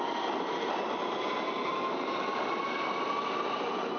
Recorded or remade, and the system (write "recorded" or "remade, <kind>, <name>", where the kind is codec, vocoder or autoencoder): recorded